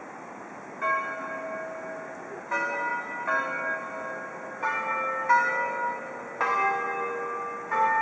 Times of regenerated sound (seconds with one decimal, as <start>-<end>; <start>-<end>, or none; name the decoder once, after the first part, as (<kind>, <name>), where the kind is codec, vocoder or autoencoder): none